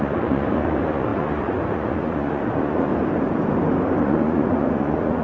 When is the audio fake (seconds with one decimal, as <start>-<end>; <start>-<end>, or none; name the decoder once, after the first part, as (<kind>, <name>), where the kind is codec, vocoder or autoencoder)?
0.0-2.9 (vocoder, Vocos); 4.0-5.2